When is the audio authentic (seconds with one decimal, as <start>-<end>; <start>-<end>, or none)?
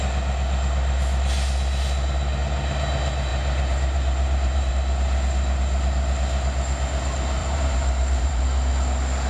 0.0-3.3; 4.7-7.4; 8.4-9.3